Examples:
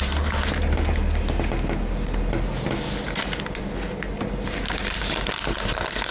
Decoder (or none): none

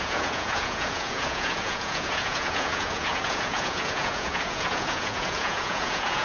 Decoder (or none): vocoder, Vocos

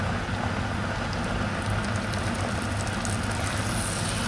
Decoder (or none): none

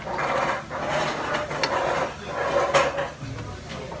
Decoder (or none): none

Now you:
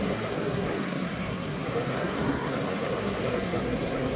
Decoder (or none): codec, SNAC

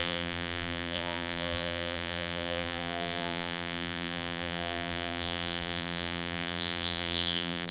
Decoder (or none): vocoder, BigVGAN v2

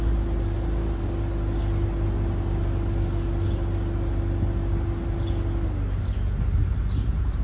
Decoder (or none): none